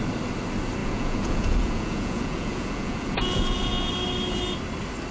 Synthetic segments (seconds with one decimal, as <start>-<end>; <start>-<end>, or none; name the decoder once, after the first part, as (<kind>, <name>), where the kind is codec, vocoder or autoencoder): 0.8-3.9 (vocoder, Vocos)